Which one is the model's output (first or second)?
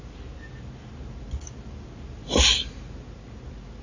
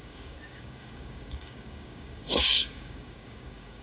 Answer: second